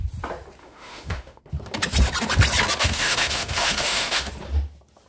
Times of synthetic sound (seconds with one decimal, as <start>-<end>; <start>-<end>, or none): 0.6-1.4; 2.8-4.3